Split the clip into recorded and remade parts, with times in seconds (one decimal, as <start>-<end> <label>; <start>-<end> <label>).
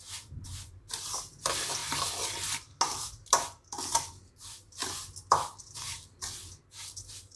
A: 0.0-7.4 recorded